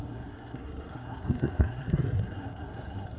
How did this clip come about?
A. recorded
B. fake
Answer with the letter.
B